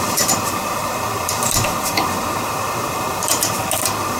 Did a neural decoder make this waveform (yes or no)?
yes